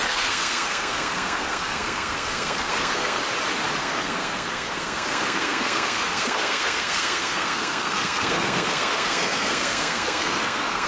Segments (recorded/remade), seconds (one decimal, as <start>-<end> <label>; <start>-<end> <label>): 0.0-3.2 remade; 3.2-3.8 recorded; 3.8-10.9 remade